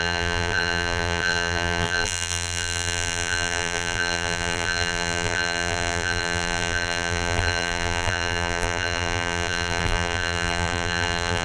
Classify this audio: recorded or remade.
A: remade